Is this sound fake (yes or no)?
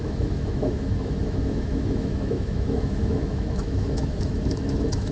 yes